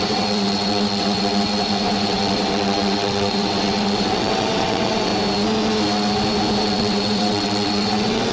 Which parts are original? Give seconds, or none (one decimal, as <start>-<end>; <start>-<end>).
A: 5.1-6.6